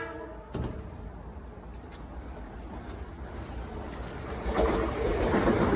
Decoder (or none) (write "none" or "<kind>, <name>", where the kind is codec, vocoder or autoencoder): none